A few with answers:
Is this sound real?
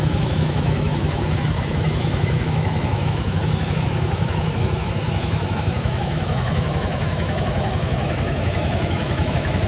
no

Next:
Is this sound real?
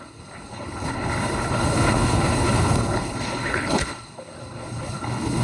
no